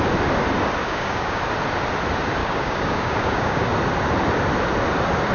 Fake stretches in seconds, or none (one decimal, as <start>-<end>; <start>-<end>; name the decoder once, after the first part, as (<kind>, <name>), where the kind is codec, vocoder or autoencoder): 0.8-1.4 (codec, DAC); 2.4-3.7